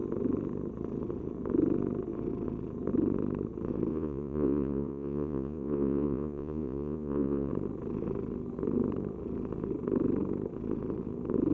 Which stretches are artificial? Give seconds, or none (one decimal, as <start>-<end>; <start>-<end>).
3.9-7.5